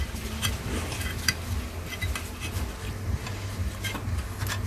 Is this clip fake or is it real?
real